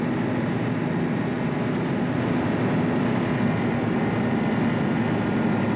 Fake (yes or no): no